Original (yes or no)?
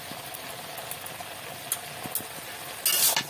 yes